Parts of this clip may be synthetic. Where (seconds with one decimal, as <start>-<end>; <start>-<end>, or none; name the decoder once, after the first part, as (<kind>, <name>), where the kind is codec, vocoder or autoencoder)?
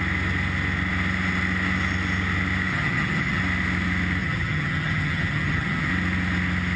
2.7-3.4 (vocoder, HiFi-GAN); 4.2-5.9